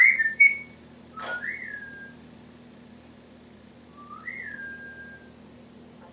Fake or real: real